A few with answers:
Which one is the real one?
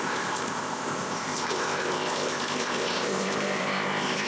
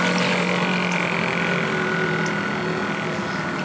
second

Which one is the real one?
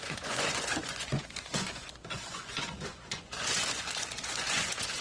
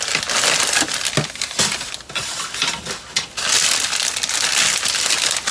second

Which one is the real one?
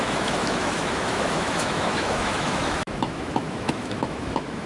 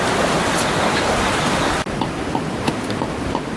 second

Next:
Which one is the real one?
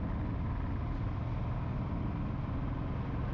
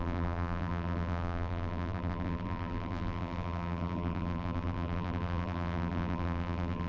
first